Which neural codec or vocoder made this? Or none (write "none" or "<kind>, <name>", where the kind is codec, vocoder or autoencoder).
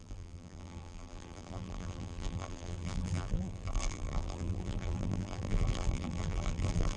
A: vocoder, BigVGAN v2